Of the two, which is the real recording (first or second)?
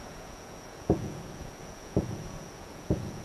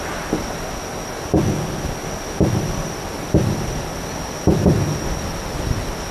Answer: second